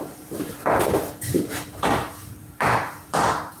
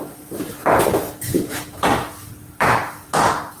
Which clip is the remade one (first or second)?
first